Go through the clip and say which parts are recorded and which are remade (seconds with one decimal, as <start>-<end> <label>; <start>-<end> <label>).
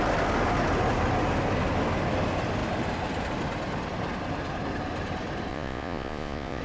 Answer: 0.0-5.5 recorded; 5.5-6.6 remade